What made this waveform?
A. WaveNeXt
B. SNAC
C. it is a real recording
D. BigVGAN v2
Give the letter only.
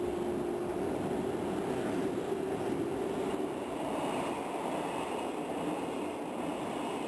C